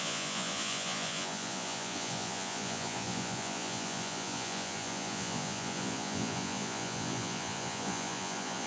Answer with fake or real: fake